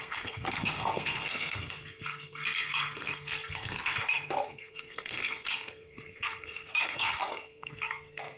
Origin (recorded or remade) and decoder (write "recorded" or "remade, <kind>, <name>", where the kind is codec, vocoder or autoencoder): remade, codec, SNAC